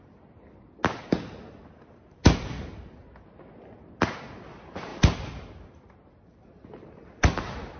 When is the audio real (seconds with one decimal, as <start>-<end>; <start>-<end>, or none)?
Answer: 0.0-7.8